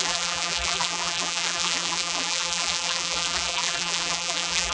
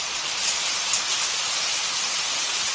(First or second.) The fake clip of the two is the first